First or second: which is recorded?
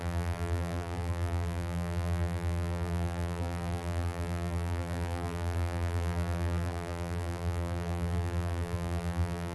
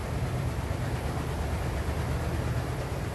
second